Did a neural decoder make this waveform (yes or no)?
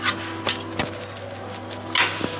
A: no